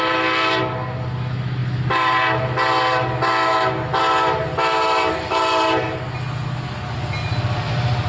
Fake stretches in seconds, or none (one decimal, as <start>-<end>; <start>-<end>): none